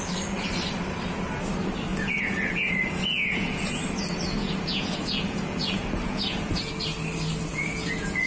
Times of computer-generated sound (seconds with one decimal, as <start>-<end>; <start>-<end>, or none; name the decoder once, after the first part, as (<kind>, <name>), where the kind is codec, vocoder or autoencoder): 1.9-3.8 (vocoder, Vocos); 4.4-6.7; 7.5-8.3